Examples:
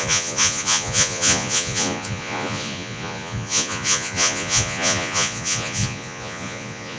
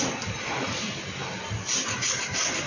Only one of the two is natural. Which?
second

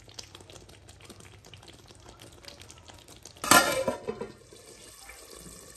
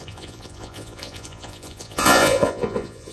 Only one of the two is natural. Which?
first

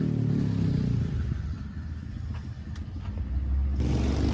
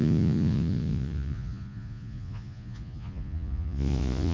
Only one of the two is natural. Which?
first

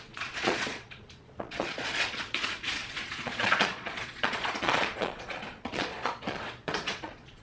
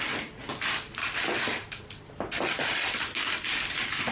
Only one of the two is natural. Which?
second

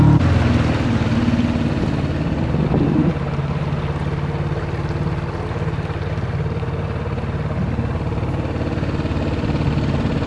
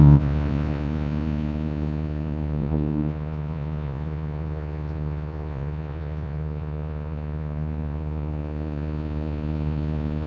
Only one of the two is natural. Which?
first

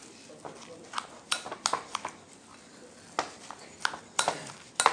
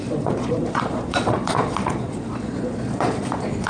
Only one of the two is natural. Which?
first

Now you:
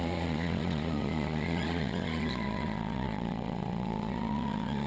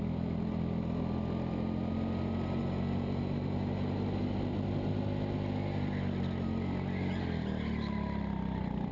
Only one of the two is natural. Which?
second